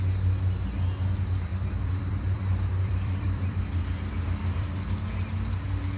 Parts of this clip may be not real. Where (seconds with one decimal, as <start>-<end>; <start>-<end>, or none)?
1.5-5.1